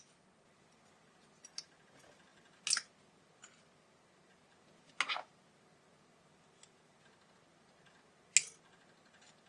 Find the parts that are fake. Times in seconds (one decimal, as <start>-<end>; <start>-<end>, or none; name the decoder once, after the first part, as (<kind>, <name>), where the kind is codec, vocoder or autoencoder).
none